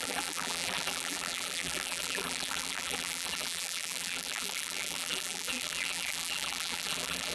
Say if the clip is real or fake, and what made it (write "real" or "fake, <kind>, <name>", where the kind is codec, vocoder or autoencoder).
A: fake, vocoder, BigVGAN v2